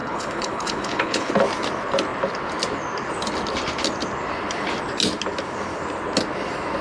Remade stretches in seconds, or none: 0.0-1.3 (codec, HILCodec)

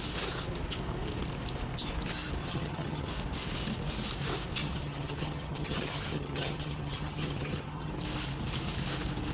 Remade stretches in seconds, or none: 2.4-3.1 (vocoder, HiFi-GAN); 4.6-7.9